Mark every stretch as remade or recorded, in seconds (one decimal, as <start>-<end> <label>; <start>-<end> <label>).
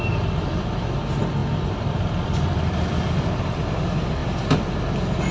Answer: 0.0-1.4 recorded; 1.4-3.8 remade; 3.8-5.3 recorded